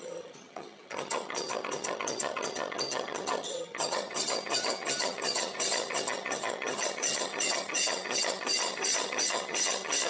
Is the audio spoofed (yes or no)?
yes